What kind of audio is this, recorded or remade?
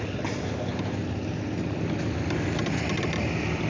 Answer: recorded